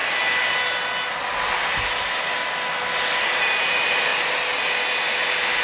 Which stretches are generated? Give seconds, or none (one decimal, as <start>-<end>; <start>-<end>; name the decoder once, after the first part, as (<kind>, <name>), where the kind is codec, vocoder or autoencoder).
none